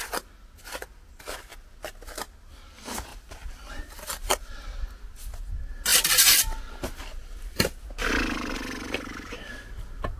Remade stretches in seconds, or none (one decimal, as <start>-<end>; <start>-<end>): 3.1-4.6